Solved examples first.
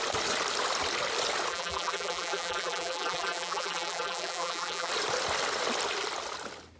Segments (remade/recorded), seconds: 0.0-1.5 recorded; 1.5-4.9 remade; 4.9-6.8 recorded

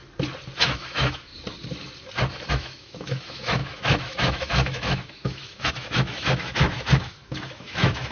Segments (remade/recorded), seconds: 0.0-0.6 recorded; 0.6-1.3 remade; 1.3-2.5 recorded; 2.5-8.1 remade

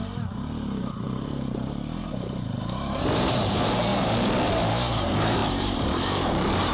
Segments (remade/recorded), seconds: 0.0-3.9 remade; 3.9-4.7 recorded; 4.7-6.7 remade

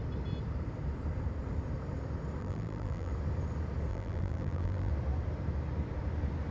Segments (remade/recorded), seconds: 0.0-2.4 recorded; 2.4-3.1 remade; 3.1-3.9 recorded; 3.9-4.9 remade; 4.9-6.5 recorded

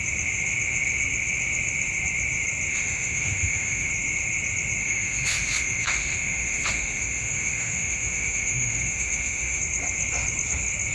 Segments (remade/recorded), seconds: 0.0-2.7 recorded; 2.7-3.9 remade; 3.9-4.8 recorded; 4.8-9.6 remade; 9.6-10.9 recorded

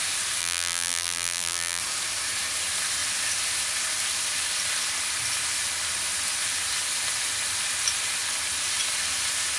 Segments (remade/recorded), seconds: 0.0-0.4 recorded; 0.4-1.8 remade; 1.8-9.6 recorded

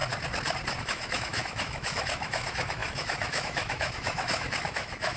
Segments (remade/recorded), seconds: 0.0-0.8 recorded; 0.8-5.2 remade

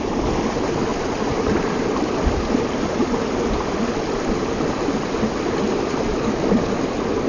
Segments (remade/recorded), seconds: 0.0-6.1 recorded; 6.1-6.8 remade; 6.8-7.3 recorded